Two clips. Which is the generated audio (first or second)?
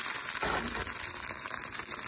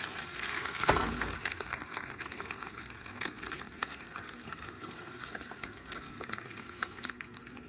second